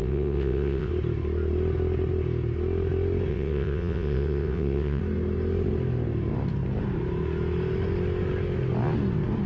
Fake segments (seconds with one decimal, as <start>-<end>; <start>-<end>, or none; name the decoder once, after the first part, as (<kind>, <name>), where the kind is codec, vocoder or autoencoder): 0.0-0.9 (vocoder, WaveNeXt); 3.3-5.0